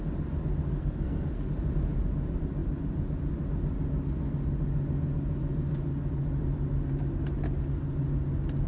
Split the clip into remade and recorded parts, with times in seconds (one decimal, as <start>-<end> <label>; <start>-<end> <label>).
0.0-0.7 recorded; 0.7-1.5 remade; 1.5-8.7 recorded